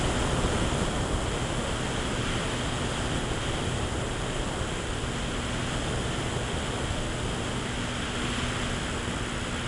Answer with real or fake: real